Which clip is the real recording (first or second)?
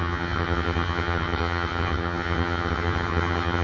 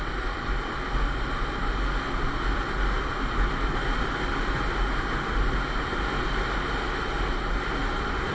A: second